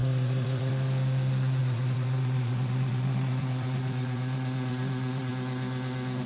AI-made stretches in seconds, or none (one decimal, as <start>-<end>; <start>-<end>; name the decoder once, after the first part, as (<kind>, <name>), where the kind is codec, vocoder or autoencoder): 0.0-0.7 (vocoder, Vocos); 1.6-5.3